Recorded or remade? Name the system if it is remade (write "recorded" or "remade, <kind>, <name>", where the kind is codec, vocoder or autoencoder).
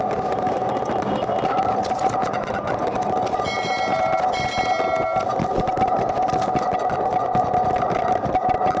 recorded